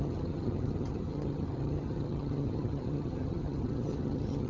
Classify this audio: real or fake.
fake